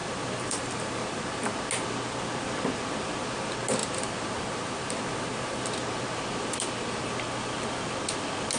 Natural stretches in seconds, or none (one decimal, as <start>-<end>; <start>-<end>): 1.6-3.8; 5.6-8.6